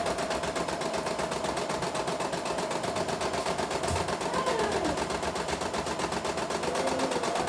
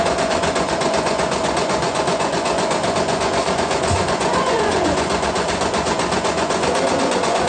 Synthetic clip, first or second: second